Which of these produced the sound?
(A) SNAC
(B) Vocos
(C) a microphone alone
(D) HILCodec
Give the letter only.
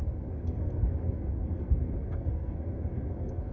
A